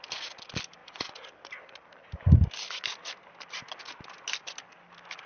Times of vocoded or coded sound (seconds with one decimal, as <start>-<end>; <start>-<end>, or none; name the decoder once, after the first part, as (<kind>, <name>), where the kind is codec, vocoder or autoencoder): 0.8-1.3 (vocoder, Vocos)